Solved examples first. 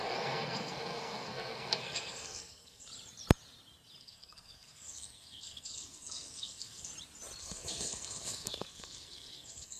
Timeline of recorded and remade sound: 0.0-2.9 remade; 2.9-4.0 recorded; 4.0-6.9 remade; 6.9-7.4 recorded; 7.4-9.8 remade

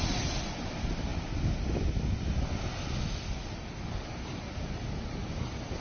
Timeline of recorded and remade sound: 0.0-5.8 recorded

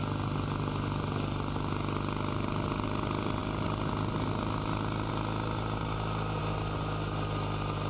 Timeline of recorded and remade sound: 0.0-7.9 recorded

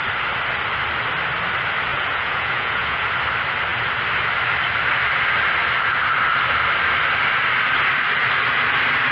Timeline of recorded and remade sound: 0.0-1.9 recorded; 1.9-3.1 remade; 3.1-9.1 recorded

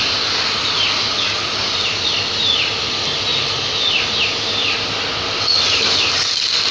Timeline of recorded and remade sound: 0.0-6.7 recorded

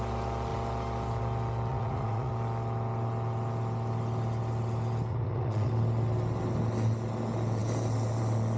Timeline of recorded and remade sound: 0.0-1.7 recorded; 1.7-2.3 remade; 2.3-5.1 recorded; 5.1-5.7 remade; 5.7-8.6 recorded

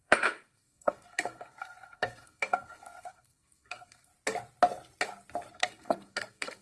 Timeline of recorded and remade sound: 0.0-4.1 remade; 4.1-5.5 recorded; 5.5-6.6 remade